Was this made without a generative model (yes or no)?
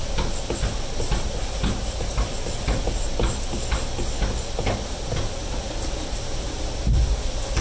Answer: yes